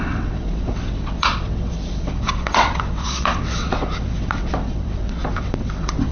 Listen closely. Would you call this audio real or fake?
fake